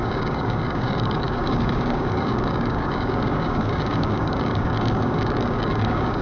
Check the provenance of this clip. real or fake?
fake